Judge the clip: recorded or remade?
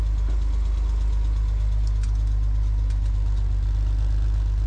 recorded